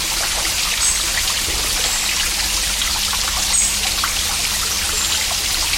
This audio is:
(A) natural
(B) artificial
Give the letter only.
A